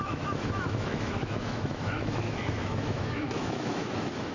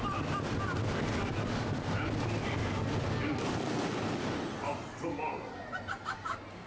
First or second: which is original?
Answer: second